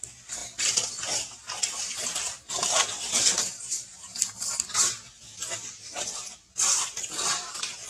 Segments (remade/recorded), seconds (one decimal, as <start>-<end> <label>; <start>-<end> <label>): 0.0-7.9 recorded